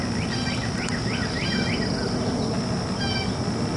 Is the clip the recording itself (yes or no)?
yes